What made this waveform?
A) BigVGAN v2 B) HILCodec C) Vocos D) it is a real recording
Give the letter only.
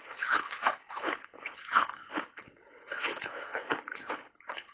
B